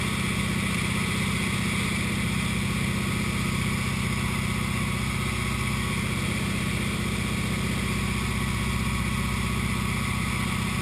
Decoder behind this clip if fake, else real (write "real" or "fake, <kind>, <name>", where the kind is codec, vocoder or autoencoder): real